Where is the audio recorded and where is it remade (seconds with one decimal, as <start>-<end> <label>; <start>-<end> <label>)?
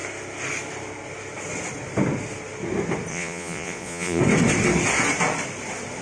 0.0-3.1 recorded; 3.1-4.2 remade; 4.2-6.0 recorded